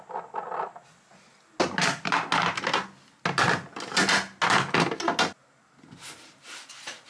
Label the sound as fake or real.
real